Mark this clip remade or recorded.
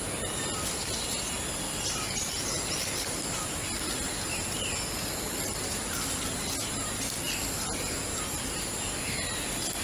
recorded